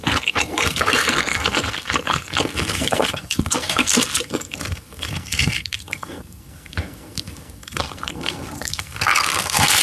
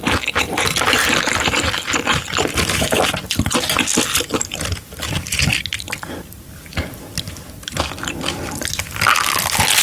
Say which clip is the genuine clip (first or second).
second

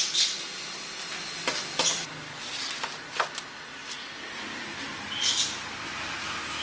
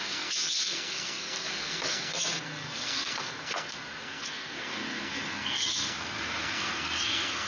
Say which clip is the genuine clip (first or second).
first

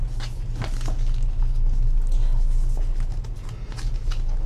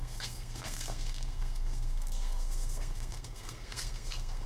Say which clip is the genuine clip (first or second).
first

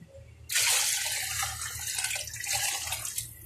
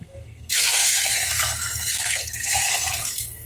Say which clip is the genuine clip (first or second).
first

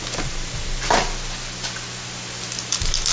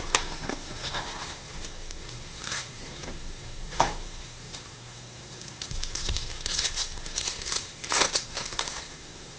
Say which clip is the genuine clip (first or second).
first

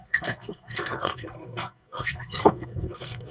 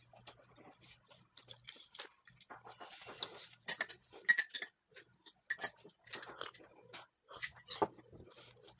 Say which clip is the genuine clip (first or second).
second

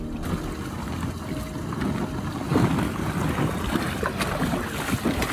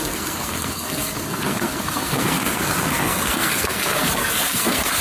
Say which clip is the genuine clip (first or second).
first